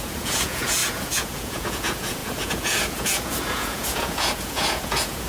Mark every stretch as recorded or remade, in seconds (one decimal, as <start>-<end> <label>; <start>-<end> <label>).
0.0-5.3 remade